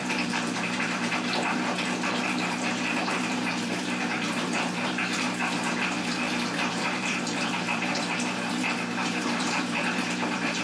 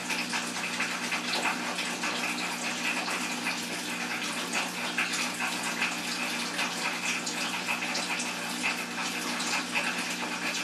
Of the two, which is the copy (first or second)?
first